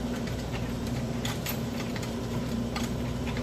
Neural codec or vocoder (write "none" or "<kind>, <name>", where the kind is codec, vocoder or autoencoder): vocoder, BigVGAN v2